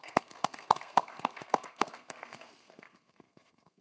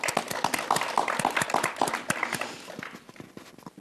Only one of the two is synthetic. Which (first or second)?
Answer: first